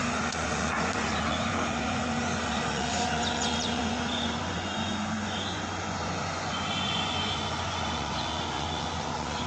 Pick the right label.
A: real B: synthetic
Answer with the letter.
B